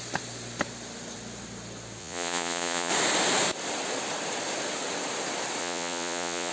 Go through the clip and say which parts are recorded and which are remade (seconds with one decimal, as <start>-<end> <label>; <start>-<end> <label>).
0.0-2.0 recorded; 2.0-2.9 remade; 2.9-5.6 recorded; 5.6-6.5 remade